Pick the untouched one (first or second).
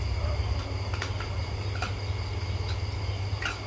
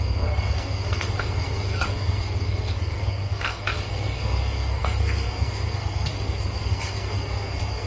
first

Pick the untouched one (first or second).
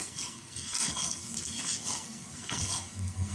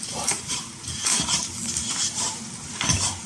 second